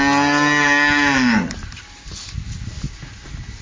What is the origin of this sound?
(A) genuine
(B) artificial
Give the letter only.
A